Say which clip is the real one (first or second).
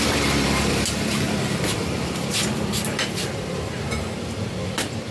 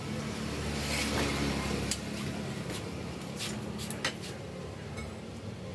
second